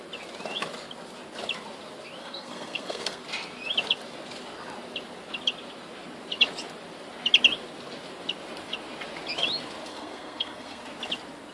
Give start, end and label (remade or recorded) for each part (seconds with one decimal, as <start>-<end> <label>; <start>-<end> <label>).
0.0-2.2 recorded; 2.2-3.2 remade; 3.2-9.9 recorded; 9.9-10.8 remade; 10.8-11.5 recorded